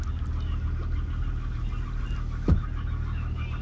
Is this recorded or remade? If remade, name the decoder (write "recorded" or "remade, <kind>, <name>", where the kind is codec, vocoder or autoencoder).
recorded